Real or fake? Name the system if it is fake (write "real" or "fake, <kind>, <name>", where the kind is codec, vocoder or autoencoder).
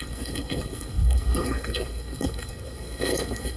fake, codec, SNAC